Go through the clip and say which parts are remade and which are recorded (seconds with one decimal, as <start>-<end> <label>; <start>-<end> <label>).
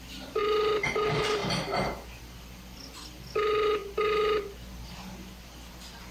0.0-1.4 remade; 1.4-2.2 recorded; 2.2-3.8 remade; 3.8-4.9 recorded; 4.9-6.1 remade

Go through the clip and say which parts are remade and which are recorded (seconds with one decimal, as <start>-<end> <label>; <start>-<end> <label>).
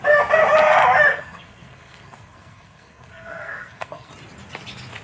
0.0-1.1 recorded; 1.1-4.1 remade; 4.1-5.0 recorded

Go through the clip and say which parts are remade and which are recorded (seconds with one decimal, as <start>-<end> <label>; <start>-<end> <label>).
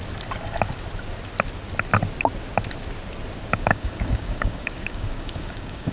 0.0-3.5 recorded; 3.5-5.9 remade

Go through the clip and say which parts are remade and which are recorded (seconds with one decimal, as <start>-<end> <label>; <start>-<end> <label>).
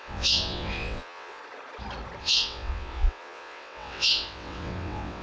0.0-1.4 remade; 1.4-2.2 recorded; 2.2-5.2 remade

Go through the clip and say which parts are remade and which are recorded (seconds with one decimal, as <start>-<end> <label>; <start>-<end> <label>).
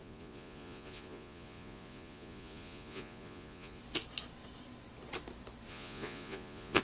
0.0-3.8 remade; 3.8-5.7 recorded; 5.7-6.8 remade